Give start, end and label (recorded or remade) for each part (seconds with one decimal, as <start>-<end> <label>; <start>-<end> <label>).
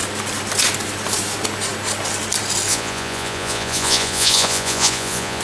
0.0-2.7 recorded; 2.7-5.4 remade